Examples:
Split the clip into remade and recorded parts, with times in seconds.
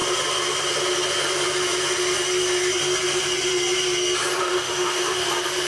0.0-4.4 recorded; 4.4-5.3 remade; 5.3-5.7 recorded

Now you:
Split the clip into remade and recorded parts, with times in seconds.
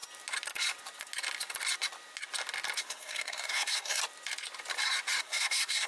0.0-2.8 recorded; 2.8-4.0 remade; 4.0-5.2 recorded; 5.2-5.9 remade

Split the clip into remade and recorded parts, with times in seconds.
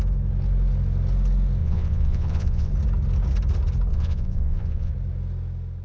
0.0-1.6 recorded; 1.6-2.7 remade; 2.7-3.9 recorded; 3.9-4.9 remade; 4.9-5.8 recorded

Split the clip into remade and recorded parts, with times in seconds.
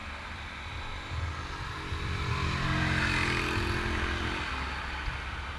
0.0-5.6 recorded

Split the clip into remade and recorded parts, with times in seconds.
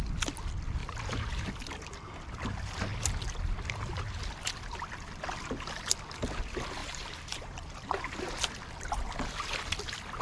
0.0-0.8 recorded; 0.8-1.5 remade; 1.5-6.8 recorded; 6.8-8.3 remade; 8.3-10.2 recorded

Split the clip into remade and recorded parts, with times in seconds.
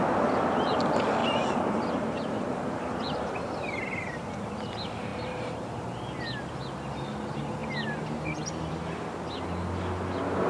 0.0-0.7 remade; 0.7-1.2 recorded; 1.2-3.3 remade; 3.3-5.1 recorded; 5.1-6.1 remade; 6.1-10.5 recorded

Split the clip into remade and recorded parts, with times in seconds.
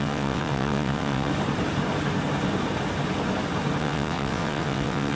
0.0-1.3 remade; 1.3-3.8 recorded; 3.8-5.1 remade